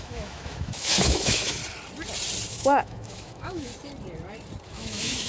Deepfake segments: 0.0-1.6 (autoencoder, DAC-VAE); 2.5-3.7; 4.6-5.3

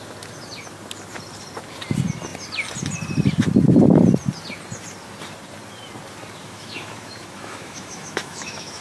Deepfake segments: 6.4-8.8 (autoencoder, DAC-VAE)

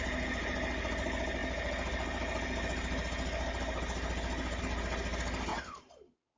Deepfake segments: none